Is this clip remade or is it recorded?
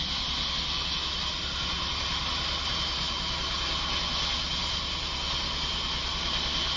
recorded